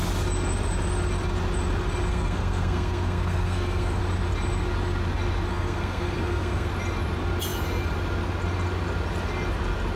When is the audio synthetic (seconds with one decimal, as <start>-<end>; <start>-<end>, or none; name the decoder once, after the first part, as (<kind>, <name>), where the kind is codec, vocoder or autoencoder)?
2.1-4.0 (codec, SNAC); 5.5-6.7